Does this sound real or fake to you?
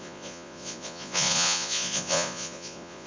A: fake